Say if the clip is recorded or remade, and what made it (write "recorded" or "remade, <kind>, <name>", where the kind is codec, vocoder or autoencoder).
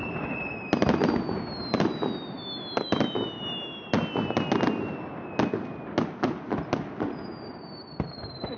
recorded